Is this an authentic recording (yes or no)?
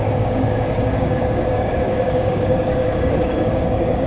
no